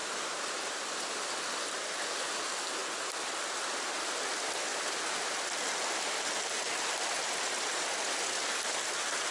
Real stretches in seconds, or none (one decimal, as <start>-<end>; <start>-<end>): 1.2-4.7; 5.3-9.3